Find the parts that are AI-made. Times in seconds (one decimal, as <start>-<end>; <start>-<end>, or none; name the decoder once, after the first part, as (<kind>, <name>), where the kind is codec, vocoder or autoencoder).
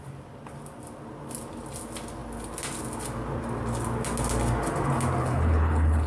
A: 5.2-6.1 (codec, HILCodec)